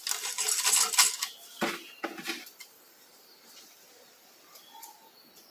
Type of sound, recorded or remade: recorded